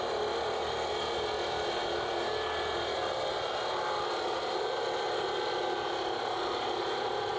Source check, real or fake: real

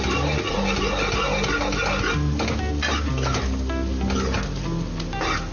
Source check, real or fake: real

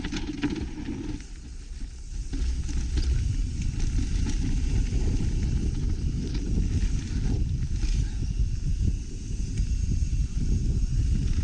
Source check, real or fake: real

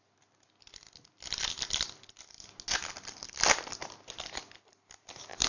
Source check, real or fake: real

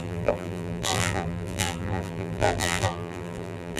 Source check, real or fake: fake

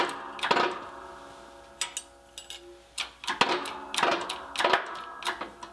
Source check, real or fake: real